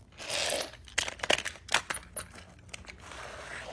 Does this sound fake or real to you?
real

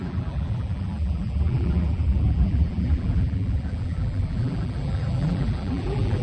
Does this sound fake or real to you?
fake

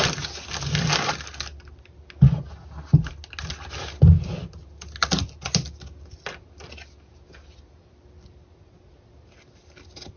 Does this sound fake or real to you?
real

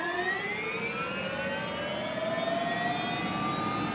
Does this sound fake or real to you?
real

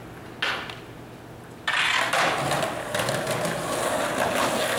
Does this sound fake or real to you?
real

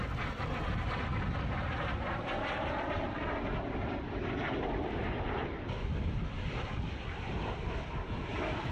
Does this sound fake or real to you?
real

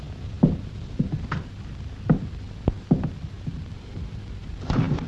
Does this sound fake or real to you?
real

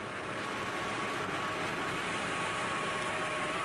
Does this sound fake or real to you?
real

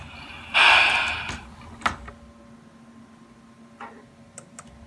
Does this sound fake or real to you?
real